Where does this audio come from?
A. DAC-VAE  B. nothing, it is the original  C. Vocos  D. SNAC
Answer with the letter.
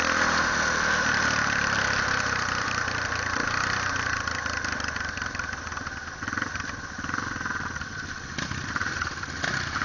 B